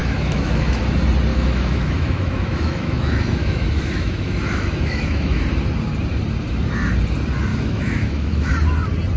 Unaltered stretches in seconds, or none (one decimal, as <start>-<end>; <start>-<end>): 0.8-1.3; 5.4-7.5; 8.5-9.2